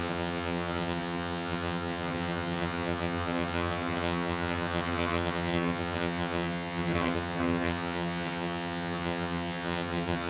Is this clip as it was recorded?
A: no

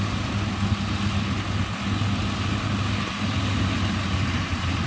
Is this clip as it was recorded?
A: yes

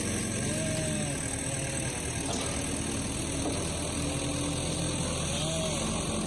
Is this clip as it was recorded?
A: yes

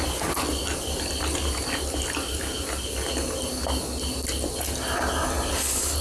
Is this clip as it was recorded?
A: yes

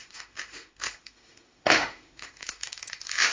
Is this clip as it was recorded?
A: no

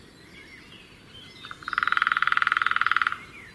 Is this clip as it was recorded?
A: yes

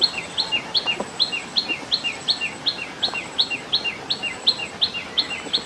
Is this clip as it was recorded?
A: yes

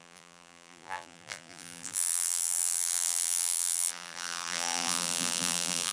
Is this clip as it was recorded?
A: no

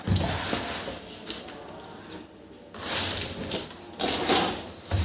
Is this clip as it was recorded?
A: yes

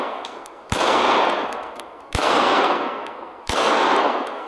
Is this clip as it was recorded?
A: no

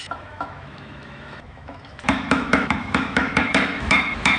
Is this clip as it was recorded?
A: no